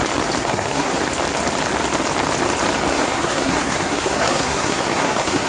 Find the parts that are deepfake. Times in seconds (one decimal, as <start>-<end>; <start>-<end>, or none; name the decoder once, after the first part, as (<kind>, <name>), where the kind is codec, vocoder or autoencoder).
0.4-1.0 (codec, SNAC); 2.9-5.5